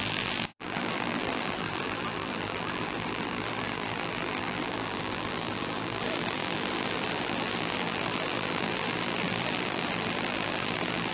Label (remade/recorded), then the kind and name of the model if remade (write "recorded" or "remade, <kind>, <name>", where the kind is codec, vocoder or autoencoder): remade, vocoder, BigVGAN v2